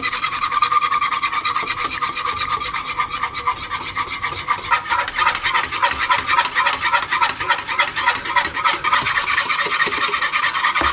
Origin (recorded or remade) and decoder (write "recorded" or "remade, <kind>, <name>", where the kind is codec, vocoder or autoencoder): recorded